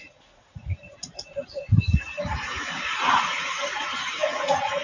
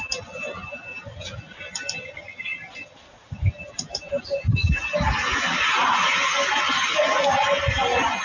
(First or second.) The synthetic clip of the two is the first